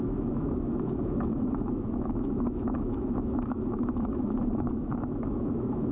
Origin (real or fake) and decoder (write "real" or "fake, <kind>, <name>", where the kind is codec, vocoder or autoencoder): fake, autoencoder, DAC-VAE